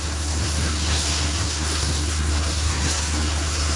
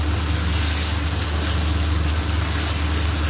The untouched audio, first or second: second